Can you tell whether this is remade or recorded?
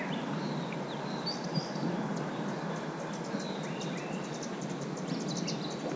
recorded